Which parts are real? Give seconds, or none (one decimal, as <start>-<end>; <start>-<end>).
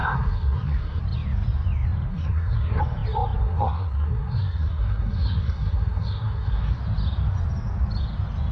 1.0-2.1; 2.8-3.4; 6.8-8.5